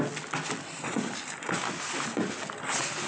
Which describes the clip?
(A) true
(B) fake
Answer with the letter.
A